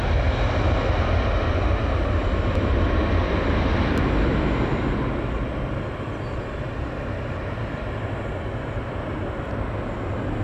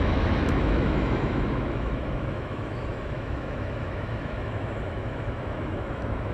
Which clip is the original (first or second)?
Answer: first